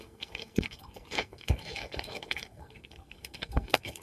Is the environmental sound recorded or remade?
remade